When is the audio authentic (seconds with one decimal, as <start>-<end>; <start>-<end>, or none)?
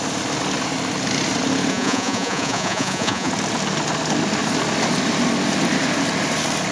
0.0-1.7; 3.3-6.7